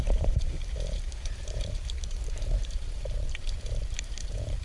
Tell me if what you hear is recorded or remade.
remade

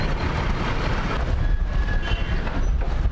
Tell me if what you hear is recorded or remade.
recorded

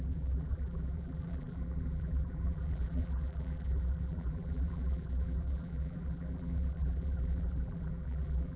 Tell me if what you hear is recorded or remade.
remade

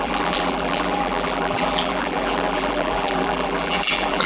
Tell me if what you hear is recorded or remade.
remade